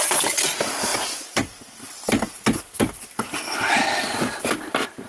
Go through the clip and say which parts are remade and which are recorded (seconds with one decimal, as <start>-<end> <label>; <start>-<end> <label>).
0.0-0.9 remade; 0.9-2.8 recorded; 2.8-5.1 remade